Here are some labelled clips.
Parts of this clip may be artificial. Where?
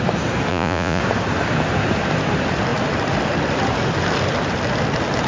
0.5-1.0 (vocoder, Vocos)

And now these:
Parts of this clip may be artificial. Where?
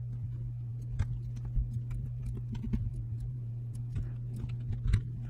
2.9-3.8 (vocoder, Vocos)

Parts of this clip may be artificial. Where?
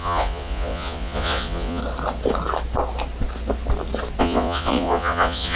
0.0-1.8 (vocoder, Vocos); 4.2-5.6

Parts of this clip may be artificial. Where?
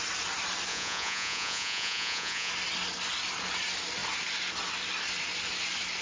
0.7-2.5 (vocoder, Vocos)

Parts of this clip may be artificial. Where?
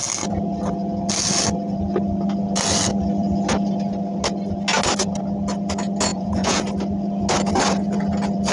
6.1-6.6 (vocoder, Vocos)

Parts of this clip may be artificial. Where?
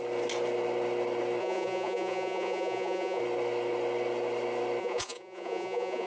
1.4-3.2 (vocoder, Vocos); 4.8-6.1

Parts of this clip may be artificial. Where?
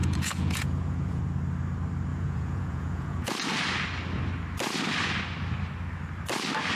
0.0-1.2 (vocoder, Vocos); 2.1-3.3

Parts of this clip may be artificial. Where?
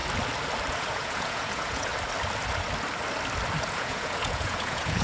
0.7-1.9 (vocoder, Vocos); 3.6-5.0